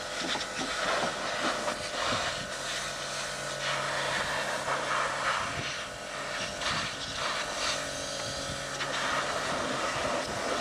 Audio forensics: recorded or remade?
recorded